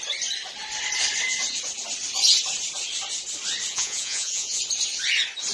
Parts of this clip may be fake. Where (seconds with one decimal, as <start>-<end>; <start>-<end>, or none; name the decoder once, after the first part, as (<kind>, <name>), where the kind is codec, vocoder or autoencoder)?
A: 3.7-4.6 (vocoder, Vocos)